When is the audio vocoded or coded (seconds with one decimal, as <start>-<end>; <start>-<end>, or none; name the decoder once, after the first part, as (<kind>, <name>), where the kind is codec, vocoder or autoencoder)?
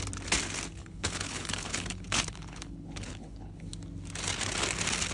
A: 0.8-3.7 (codec, HILCodec)